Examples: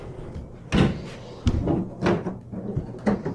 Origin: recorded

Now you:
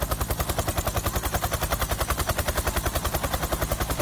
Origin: recorded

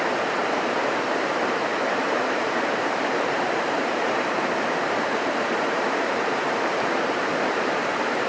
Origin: remade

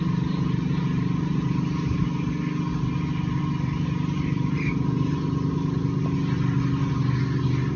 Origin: recorded